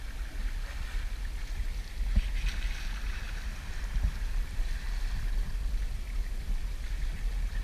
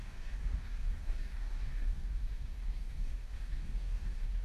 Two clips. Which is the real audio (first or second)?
first